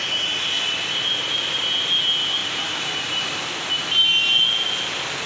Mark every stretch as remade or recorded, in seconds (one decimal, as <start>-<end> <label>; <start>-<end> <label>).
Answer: 0.0-2.4 recorded; 2.4-3.4 remade; 3.4-5.3 recorded